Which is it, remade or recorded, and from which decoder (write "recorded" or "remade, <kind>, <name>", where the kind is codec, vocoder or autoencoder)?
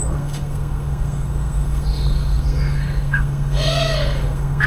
remade, codec, SNAC